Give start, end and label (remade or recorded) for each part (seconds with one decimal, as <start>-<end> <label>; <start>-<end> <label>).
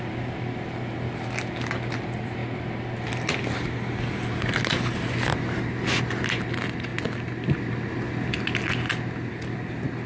0.0-10.1 recorded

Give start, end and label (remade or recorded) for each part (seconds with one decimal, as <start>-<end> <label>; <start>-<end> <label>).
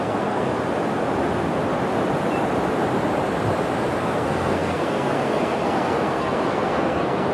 0.0-0.5 remade; 0.5-4.0 recorded; 4.0-7.3 remade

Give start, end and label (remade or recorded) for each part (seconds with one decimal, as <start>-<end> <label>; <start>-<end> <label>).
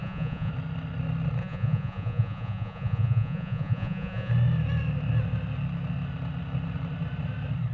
0.0-0.5 remade; 0.5-1.4 recorded; 1.4-4.3 remade; 4.3-7.7 recorded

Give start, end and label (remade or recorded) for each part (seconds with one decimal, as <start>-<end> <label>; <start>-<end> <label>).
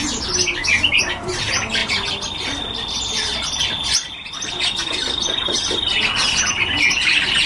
0.0-7.5 recorded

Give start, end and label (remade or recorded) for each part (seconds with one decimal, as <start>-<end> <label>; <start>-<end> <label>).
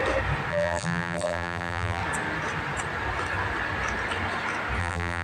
0.0-0.5 recorded; 0.5-2.0 remade; 2.0-4.8 recorded; 4.8-5.2 remade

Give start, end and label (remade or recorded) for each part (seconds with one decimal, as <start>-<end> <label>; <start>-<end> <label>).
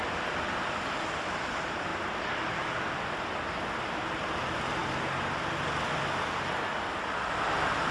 0.0-1.9 recorded; 1.9-2.5 remade; 2.5-4.8 recorded; 4.8-6.0 remade; 6.0-7.9 recorded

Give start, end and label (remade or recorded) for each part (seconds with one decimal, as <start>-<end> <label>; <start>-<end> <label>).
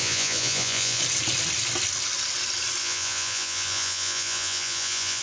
0.0-1.0 remade; 1.0-2.8 recorded; 2.8-5.2 remade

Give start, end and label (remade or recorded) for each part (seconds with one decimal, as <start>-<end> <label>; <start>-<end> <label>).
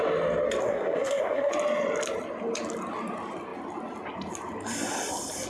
0.0-0.6 recorded; 0.6-1.5 remade; 1.5-5.5 recorded